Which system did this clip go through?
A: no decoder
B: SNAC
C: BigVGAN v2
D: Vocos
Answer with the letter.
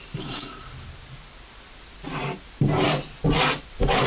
A